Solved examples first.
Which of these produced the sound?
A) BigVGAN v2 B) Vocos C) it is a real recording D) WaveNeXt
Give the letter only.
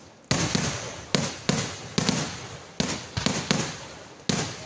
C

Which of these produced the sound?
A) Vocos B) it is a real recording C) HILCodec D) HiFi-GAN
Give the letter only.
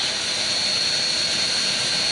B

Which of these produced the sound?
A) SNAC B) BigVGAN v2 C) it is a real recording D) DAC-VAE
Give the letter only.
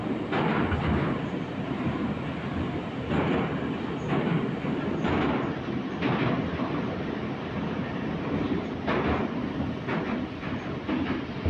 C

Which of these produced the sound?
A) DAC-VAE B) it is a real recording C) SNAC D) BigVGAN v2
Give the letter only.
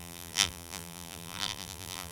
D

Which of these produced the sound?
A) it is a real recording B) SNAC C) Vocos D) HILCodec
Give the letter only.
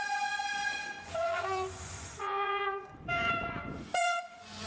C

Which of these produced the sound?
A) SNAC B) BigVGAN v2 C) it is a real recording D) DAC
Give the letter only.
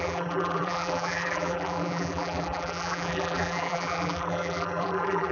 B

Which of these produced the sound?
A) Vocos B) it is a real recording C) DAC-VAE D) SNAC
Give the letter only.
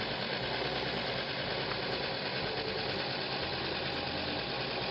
B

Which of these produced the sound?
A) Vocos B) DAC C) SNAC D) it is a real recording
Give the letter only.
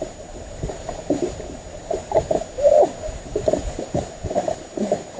D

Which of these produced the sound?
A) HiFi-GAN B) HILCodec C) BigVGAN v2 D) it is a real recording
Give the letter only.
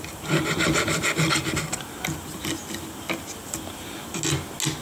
D